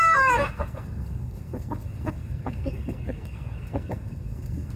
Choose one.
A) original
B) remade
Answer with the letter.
B